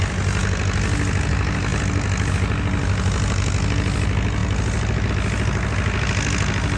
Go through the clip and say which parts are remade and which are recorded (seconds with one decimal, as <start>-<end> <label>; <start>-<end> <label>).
0.0-6.8 recorded